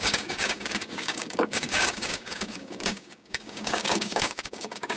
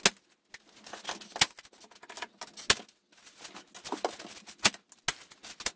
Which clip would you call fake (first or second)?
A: first